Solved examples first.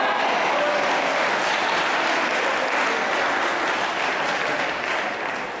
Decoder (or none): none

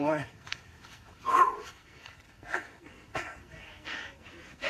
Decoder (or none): codec, SNAC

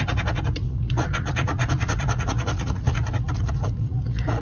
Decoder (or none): vocoder, Vocos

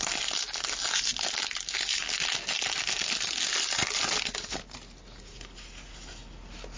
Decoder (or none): none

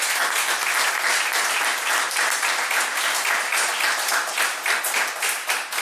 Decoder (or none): none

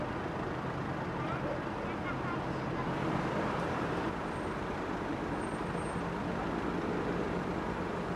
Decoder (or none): none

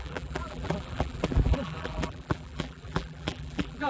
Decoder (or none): vocoder, BigVGAN v2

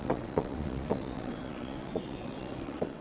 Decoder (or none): vocoder, WaveNeXt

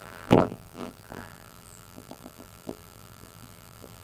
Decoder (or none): vocoder, BigVGAN v2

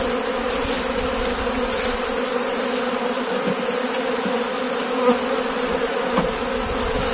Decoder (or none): none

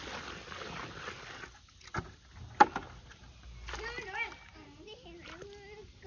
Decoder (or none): none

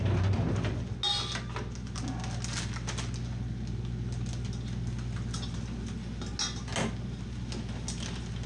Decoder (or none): none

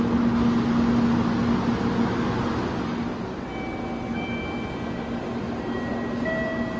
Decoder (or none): none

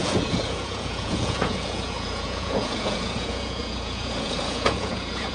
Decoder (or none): vocoder, Vocos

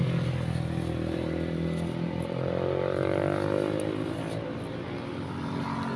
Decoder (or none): none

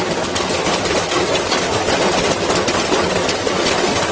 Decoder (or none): none